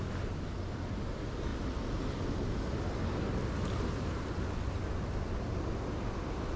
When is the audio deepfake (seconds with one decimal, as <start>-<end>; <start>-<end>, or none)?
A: none